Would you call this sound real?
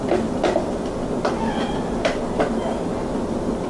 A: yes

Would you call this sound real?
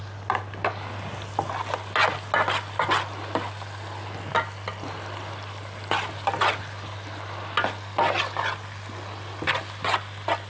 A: yes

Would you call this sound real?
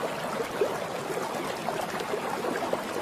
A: yes